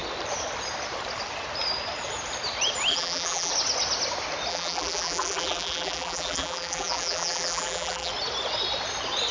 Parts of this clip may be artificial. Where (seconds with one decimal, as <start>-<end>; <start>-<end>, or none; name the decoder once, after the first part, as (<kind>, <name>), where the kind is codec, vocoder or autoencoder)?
2.9-3.5 (vocoder, BigVGAN v2); 4.5-8.1